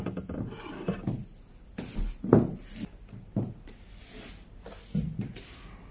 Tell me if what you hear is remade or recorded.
recorded